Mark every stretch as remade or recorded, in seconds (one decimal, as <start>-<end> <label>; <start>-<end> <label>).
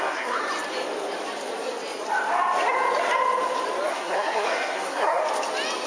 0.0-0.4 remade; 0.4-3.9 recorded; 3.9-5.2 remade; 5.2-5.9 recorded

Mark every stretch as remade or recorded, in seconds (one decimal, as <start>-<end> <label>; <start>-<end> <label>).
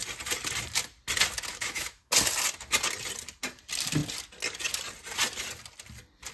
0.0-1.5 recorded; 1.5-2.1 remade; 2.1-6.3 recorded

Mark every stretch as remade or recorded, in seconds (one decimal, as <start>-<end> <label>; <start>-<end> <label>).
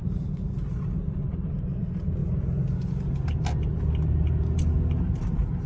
0.0-5.7 recorded